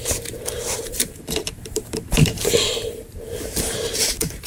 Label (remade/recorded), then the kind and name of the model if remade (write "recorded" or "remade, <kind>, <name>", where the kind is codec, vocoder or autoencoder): remade, vocoder, BigVGAN v2